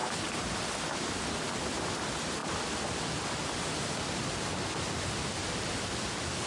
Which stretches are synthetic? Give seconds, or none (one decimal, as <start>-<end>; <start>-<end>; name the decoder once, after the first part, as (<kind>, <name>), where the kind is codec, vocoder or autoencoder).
none